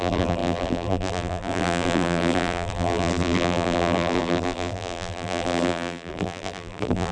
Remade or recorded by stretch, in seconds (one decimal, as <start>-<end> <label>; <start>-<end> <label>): 0.0-7.1 remade